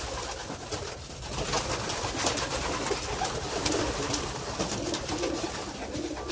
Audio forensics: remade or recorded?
recorded